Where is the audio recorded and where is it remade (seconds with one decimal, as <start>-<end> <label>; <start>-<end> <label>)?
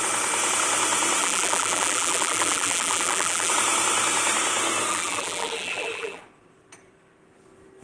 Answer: 0.0-1.2 recorded; 1.2-3.5 remade; 3.5-4.9 recorded; 4.9-6.2 remade; 6.2-7.8 recorded